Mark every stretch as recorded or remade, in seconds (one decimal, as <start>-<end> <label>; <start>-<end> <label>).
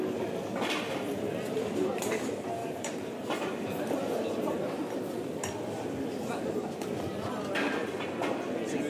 0.0-2.6 recorded; 2.6-4.6 remade; 4.6-8.9 recorded